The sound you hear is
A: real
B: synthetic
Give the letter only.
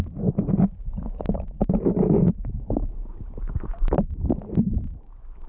A